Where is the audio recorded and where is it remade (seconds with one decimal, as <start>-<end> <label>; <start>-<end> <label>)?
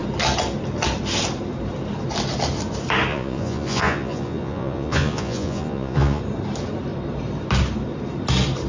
0.0-3.1 recorded; 3.1-6.2 remade; 6.2-8.7 recorded